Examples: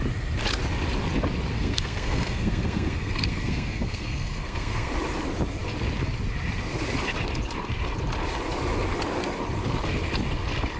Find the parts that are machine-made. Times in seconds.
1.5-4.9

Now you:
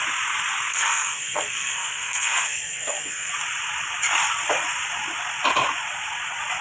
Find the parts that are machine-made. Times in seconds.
0.7-3.3

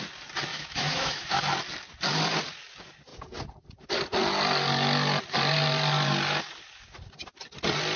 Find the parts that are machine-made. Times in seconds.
0.5-1.4

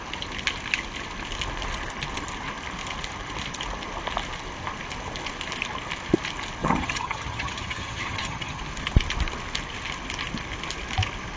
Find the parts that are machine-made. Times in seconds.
6.6-8.6

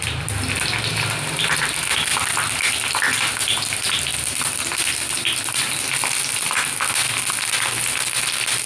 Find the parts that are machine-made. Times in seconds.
none